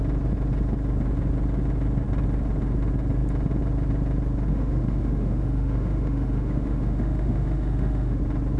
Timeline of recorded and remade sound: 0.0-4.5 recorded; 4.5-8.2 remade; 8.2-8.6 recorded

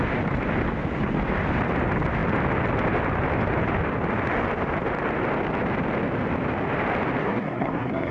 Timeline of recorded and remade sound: 0.0-7.2 recorded; 7.2-8.1 remade

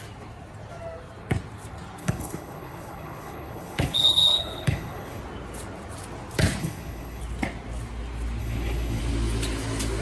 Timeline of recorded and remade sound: 0.0-2.0 recorded; 2.0-5.2 remade; 5.2-6.6 recorded; 6.6-7.2 remade; 7.2-8.4 recorded; 8.4-9.0 remade; 9.0-10.0 recorded